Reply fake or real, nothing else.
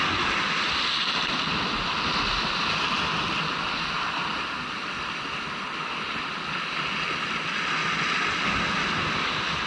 real